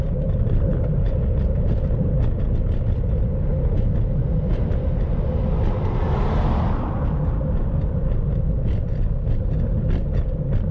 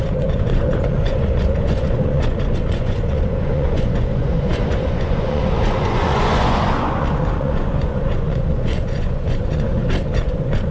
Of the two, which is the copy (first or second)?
second